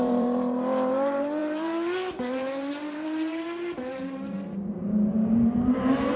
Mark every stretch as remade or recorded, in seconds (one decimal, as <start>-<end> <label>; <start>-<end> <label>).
0.0-6.2 remade